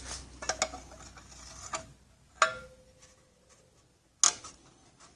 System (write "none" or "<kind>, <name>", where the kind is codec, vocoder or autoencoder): none